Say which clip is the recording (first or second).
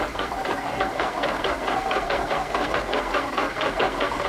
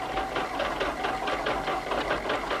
second